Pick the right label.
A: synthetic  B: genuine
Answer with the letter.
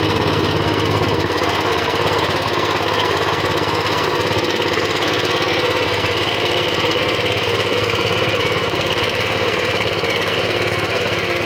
A